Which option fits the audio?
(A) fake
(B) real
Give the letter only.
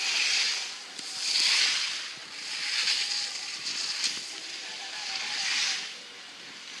B